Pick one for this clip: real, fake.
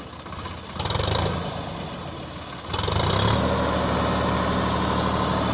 real